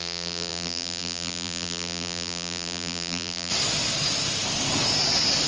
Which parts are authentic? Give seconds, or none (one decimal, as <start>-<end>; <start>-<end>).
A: 3.5-5.5